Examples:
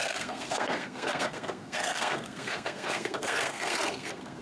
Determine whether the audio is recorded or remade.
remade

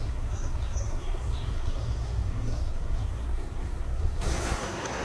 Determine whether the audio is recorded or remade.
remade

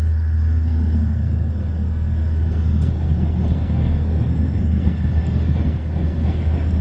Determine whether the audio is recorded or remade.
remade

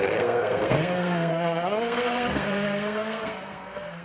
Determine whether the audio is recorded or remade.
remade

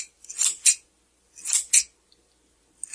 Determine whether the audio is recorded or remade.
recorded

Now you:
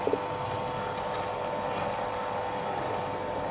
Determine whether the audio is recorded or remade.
recorded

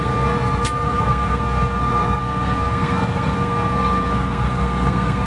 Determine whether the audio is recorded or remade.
remade